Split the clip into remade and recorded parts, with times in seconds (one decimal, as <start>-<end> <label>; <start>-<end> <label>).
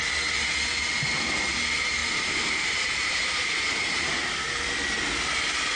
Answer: 0.0-2.0 recorded; 2.0-4.2 remade; 4.2-5.8 recorded